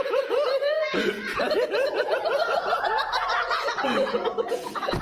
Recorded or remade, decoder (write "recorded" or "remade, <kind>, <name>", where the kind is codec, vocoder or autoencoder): remade, vocoder, Vocos